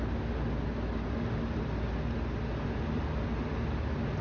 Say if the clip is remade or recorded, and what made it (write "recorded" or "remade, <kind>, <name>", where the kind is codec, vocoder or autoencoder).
recorded